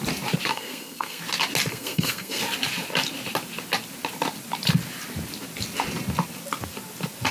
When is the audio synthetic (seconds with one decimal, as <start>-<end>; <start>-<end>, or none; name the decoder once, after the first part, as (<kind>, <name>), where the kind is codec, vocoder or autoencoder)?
0.5-1.2 (codec, SNAC); 1.7-2.4